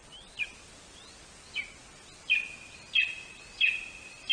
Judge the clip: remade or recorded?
recorded